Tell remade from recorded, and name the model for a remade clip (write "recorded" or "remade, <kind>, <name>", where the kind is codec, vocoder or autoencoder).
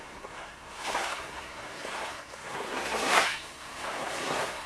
remade, codec, SNAC